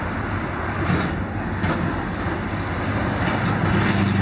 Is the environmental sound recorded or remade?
recorded